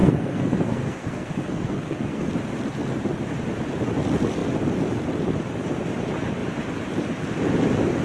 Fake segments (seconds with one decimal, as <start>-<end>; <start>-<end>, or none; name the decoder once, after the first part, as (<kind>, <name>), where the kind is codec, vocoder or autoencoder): 0.0-2.3 (codec, SNAC)